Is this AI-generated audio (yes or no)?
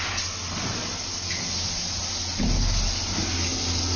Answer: no